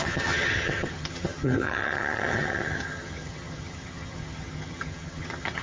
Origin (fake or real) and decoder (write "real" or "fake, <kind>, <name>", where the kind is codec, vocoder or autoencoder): fake, vocoder, HiFi-GAN